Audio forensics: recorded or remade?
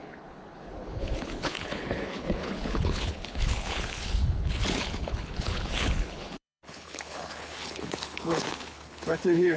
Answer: remade